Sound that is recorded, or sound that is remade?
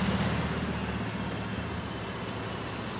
recorded